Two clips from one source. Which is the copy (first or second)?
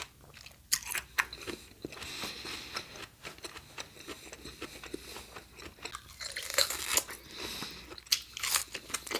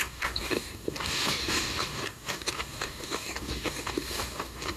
second